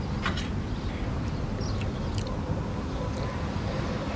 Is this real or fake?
real